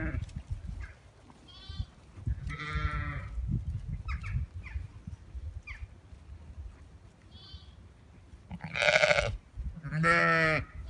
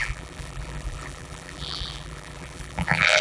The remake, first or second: second